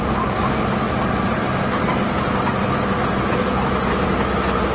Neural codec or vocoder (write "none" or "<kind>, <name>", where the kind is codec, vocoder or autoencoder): none